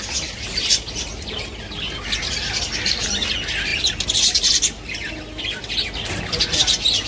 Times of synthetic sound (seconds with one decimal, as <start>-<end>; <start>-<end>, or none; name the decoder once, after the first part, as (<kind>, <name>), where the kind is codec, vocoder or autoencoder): none